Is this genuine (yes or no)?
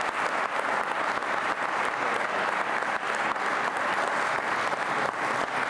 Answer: yes